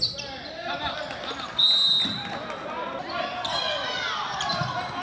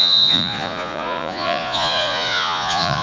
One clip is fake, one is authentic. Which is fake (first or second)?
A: second